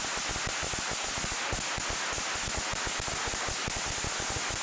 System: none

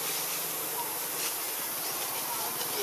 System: none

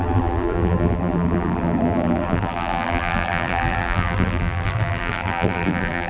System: vocoder, BigVGAN v2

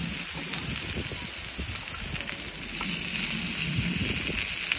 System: none